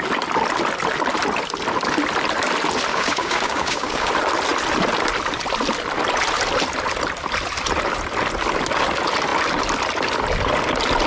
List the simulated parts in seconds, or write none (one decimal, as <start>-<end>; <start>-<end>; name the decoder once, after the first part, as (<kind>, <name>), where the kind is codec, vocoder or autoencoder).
2.9-4.1 (codec, DAC)